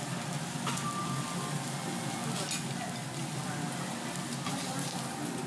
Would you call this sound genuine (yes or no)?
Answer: yes